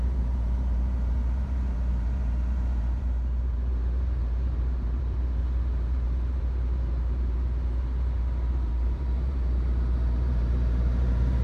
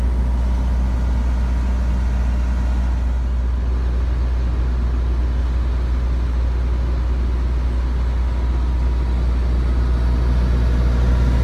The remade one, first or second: first